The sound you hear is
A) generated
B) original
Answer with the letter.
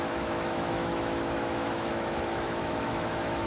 A